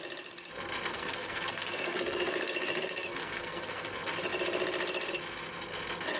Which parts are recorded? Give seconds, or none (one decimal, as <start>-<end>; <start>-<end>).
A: 0.0-0.9; 3.9-6.2